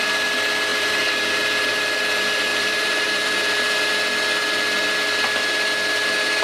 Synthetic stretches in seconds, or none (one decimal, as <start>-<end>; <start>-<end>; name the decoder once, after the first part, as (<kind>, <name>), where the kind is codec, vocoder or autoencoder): 0.7-1.4 (vocoder, BigVGAN v2); 2.5-3.6